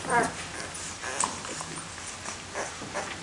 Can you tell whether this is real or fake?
real